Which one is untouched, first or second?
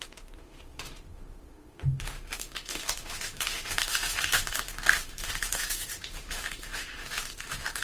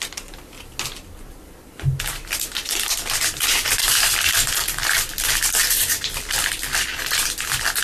second